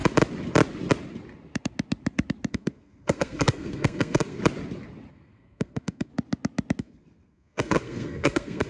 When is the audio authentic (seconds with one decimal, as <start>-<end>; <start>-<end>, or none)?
0.0-2.5; 4.4-5.1; 6.1-6.8